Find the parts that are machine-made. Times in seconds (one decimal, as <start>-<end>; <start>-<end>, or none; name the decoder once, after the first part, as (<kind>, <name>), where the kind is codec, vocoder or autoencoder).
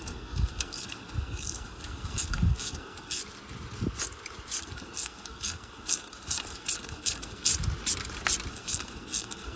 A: 0.0-3.2 (codec, SNAC); 4.6-7.5; 8.5-9.6